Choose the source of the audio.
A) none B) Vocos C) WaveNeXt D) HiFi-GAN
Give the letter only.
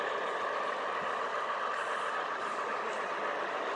A